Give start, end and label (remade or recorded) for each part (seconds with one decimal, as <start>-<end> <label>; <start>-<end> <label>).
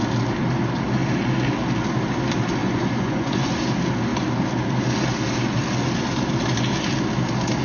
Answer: 0.0-2.6 recorded; 2.6-3.5 remade; 3.5-7.6 recorded